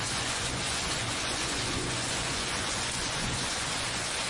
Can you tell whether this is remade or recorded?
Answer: remade